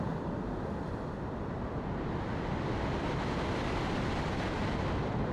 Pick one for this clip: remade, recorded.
recorded